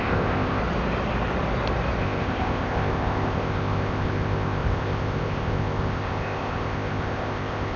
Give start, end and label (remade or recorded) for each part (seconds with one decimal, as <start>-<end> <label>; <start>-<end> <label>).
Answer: 0.0-0.6 remade; 0.6-2.0 recorded; 2.0-7.8 remade